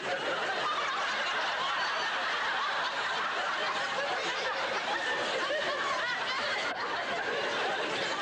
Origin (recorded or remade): recorded